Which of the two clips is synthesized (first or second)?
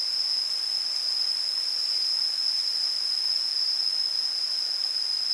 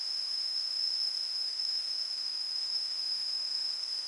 second